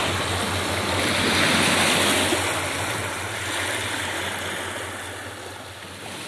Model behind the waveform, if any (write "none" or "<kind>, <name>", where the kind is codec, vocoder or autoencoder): none